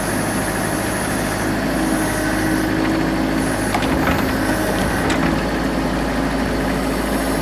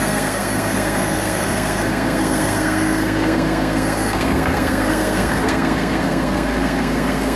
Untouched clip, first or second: first